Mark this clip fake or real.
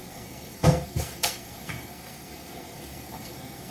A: fake